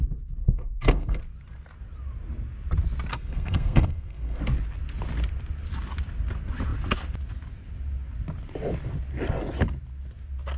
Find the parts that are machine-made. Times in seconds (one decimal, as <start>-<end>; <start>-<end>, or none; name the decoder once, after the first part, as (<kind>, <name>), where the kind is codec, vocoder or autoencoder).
0.4-1.2 (codec, SNAC); 3.1-4.4